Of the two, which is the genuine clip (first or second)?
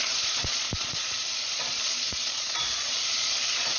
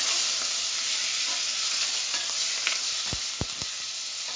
second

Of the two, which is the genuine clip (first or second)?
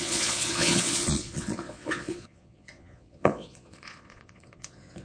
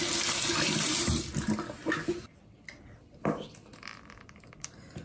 second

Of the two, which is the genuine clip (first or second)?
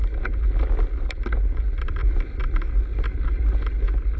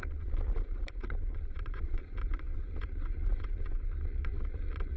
first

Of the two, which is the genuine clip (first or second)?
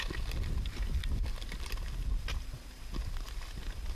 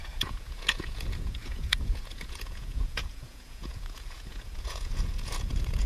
first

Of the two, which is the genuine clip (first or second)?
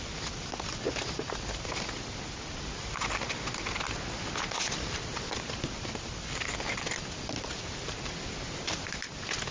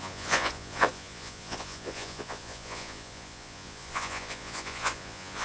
first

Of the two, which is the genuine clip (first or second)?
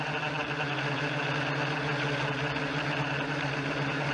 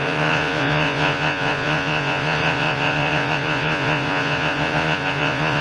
first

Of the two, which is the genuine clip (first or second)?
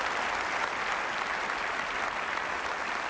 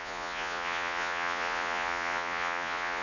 first